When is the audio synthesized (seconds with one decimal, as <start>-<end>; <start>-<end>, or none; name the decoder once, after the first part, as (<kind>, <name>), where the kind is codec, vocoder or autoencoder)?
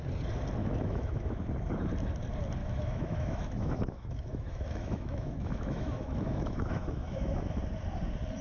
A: 0.6-1.4 (autoencoder, DAC-VAE); 2.6-7.6